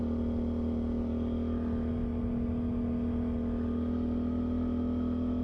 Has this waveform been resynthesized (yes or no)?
no